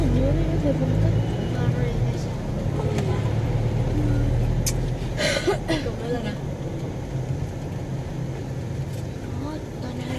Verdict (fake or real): real